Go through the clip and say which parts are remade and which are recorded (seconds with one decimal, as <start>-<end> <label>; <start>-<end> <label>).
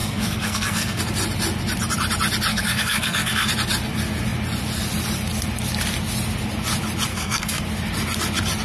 0.0-1.0 remade; 1.0-2.5 recorded; 2.5-3.5 remade; 3.5-7.1 recorded; 7.1-7.6 remade; 7.6-8.6 recorded